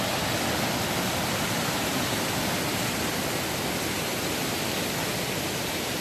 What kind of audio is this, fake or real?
real